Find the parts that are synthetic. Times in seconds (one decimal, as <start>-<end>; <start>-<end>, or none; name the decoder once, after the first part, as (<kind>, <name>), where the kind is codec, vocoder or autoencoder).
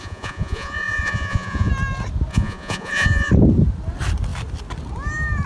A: 0.0-1.7 (vocoder, Vocos); 2.3-3.3